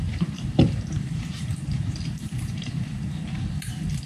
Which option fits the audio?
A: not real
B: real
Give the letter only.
A